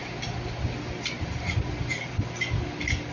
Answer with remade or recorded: recorded